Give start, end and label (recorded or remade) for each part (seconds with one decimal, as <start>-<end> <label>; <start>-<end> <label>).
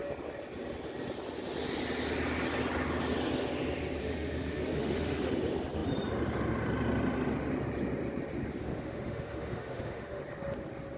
0.0-4.0 recorded; 4.0-5.3 remade; 5.3-8.6 recorded; 8.6-10.2 remade; 10.2-11.0 recorded